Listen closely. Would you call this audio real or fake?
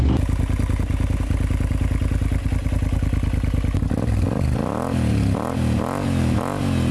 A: real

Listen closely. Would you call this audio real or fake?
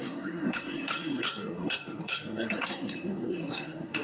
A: fake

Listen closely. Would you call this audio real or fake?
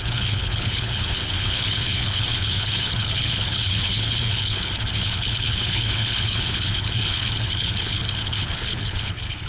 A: fake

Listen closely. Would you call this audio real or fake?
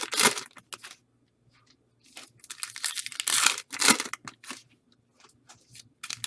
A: real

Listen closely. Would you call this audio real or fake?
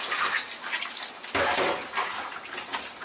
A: real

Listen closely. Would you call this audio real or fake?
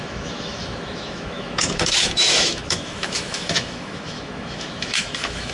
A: fake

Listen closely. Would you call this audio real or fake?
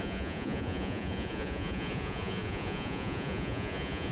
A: fake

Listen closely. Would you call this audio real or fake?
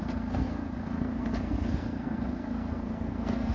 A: fake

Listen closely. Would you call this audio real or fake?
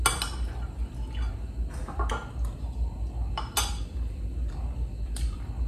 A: real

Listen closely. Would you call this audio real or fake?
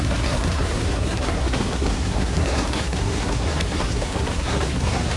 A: fake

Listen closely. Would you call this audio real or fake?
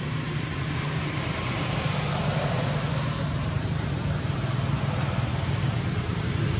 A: fake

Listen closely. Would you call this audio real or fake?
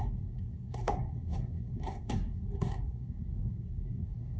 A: fake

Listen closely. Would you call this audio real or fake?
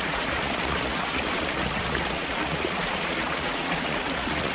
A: fake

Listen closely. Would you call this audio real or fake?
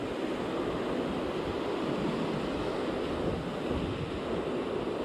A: real